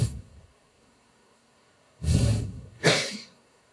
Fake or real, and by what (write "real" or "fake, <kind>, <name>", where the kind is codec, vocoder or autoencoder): fake, codec, SNAC